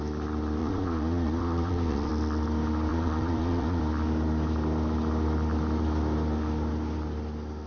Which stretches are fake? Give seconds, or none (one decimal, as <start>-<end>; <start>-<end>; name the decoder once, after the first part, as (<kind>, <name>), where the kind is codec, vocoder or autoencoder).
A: 0.6-2.1 (vocoder, Vocos); 2.9-3.8